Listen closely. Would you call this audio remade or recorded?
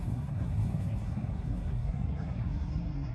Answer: remade